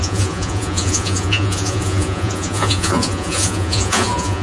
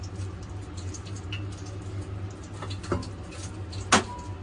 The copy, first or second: first